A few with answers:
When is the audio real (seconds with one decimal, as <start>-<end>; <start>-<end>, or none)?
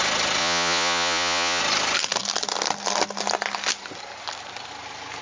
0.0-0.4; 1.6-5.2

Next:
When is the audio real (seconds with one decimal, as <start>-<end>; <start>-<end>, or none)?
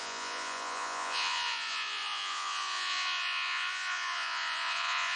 none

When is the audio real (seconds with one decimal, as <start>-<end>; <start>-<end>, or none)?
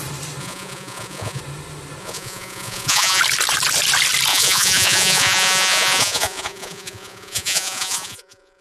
0.0-0.4; 1.4-2.0; 3.2-4.3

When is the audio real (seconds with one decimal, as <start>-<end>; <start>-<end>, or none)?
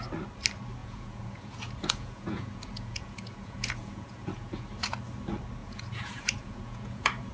0.0-0.8; 4.7-5.6